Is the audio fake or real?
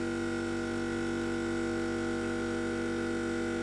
real